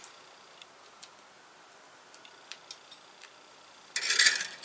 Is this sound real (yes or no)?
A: yes